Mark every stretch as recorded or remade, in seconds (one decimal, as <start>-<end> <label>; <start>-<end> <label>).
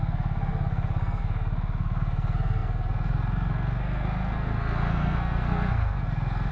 0.0-6.5 remade